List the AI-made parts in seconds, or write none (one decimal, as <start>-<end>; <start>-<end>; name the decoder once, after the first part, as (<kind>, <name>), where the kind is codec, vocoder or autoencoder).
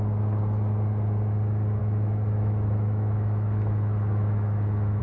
1.8-5.0 (autoencoder, DAC-VAE)